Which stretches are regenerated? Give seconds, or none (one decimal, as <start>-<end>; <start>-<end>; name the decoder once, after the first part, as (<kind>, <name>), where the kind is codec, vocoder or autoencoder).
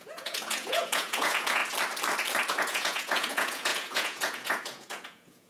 0.0-1.6 (vocoder, Vocos); 2.5-5.5